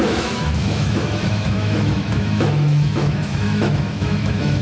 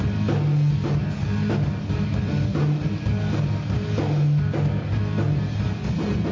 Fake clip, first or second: first